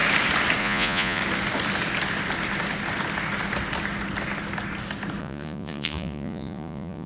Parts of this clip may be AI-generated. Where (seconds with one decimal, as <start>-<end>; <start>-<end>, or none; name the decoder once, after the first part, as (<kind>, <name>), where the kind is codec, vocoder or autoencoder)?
0.6-1.2 (vocoder, Vocos); 5.2-7.1